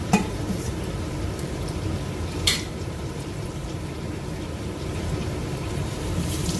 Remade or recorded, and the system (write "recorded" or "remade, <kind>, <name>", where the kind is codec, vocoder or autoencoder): remade, vocoder, BigVGAN v2